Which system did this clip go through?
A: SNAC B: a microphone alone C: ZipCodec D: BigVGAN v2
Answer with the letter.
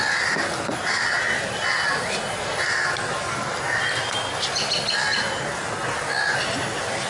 B